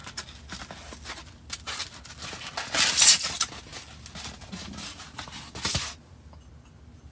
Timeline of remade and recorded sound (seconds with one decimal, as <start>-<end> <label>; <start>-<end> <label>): 0.0-7.1 recorded

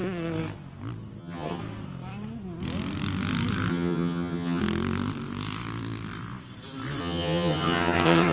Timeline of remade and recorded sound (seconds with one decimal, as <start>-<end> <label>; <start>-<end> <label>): 0.0-1.2 recorded; 1.2-1.6 remade; 1.6-3.7 recorded; 3.7-4.6 remade; 4.6-7.0 recorded; 7.0-8.3 remade

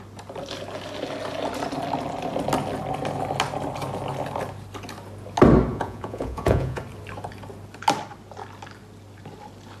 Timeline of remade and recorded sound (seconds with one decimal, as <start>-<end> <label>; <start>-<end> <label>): 0.0-5.7 recorded; 5.7-6.8 remade; 6.8-9.8 recorded